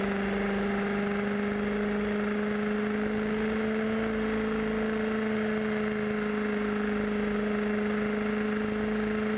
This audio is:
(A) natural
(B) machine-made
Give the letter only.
A